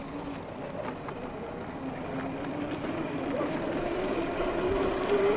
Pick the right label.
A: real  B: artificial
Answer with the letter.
A